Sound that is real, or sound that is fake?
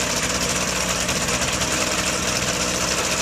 fake